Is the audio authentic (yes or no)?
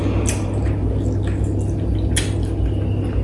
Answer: yes